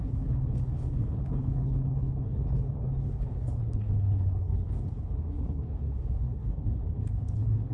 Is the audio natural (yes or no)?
no